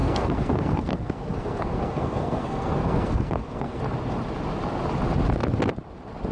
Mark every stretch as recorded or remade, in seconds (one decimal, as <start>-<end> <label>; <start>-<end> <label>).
0.0-3.8 remade; 3.8-6.3 recorded